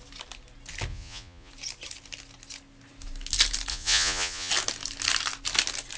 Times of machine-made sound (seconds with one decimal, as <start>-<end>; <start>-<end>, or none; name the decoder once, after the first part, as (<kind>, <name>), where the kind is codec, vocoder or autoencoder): 0.9-1.5 (vocoder, Vocos); 3.7-4.5